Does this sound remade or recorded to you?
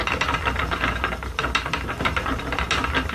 recorded